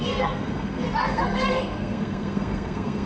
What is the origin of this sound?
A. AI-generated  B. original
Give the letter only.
A